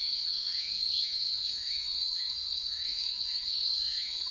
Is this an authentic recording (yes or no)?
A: no